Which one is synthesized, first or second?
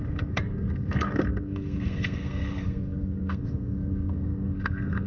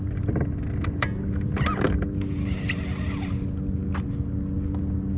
first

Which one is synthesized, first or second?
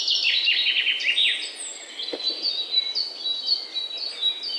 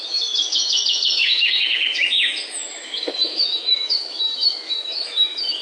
second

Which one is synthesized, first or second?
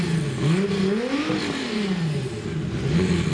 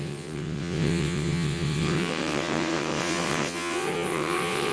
second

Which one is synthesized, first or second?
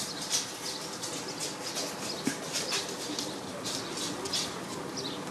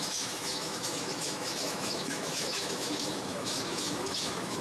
second